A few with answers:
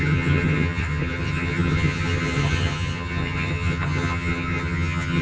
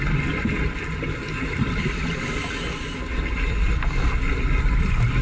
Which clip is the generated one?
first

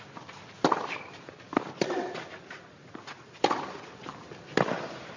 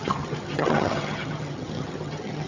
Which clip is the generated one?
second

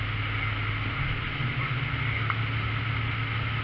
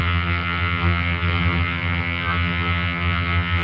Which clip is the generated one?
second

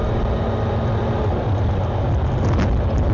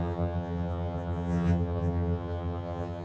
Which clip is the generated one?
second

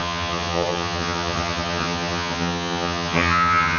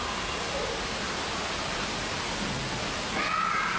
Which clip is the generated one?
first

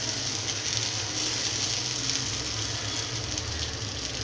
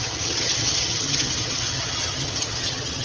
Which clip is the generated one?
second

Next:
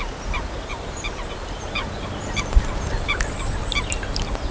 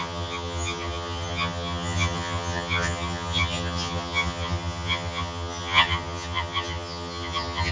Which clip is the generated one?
second